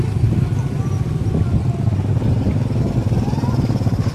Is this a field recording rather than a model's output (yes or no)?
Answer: yes